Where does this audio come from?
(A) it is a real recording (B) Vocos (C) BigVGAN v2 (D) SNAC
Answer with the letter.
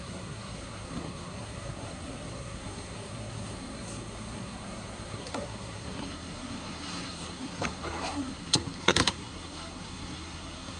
D